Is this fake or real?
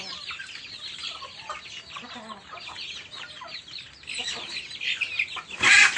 real